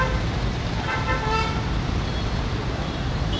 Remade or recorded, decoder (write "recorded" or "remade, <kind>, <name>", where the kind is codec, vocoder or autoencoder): remade, vocoder, BigVGAN v2